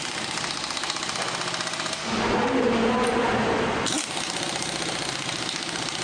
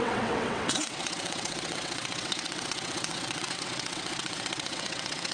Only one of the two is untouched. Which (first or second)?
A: first